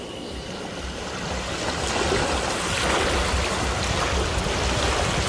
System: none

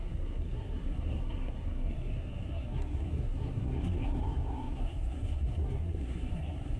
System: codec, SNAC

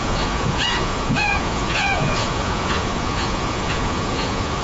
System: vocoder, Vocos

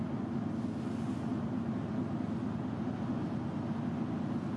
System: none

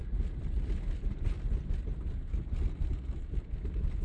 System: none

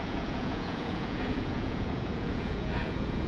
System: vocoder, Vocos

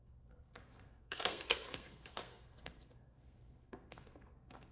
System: codec, SNAC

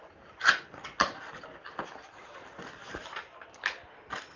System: none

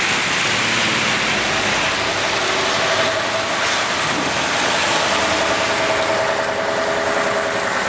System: none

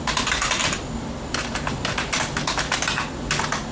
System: none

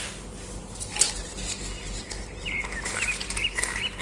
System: none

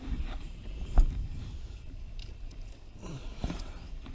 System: none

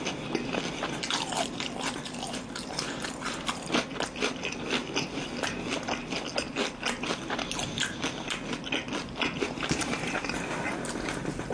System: none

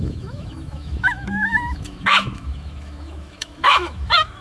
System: autoencoder, DAC-VAE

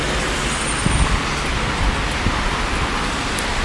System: none